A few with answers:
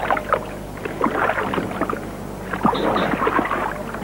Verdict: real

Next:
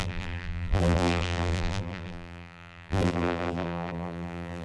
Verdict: fake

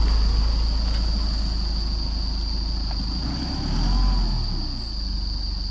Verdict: real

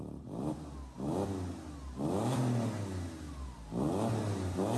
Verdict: real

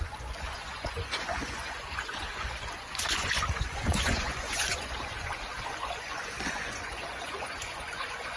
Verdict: fake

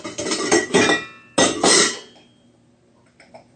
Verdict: real